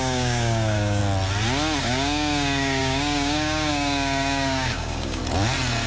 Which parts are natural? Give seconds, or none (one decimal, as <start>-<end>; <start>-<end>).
1.0-1.8; 5.2-5.9